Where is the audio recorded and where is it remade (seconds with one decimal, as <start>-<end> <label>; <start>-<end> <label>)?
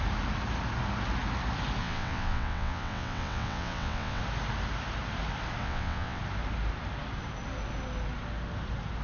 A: 0.0-1.8 recorded; 1.8-4.2 remade; 4.2-5.6 recorded; 5.6-6.2 remade; 6.2-9.0 recorded